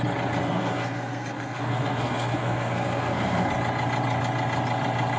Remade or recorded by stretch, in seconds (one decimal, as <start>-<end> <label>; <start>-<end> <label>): 0.0-0.4 recorded; 0.4-3.5 remade; 3.5-5.2 recorded